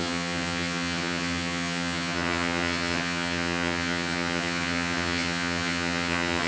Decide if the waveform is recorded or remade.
remade